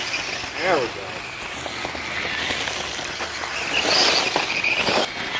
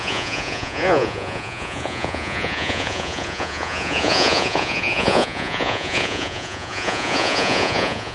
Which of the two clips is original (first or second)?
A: first